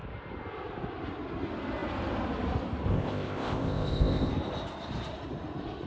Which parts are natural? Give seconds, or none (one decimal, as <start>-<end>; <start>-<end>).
0.0-2.9; 4.3-5.9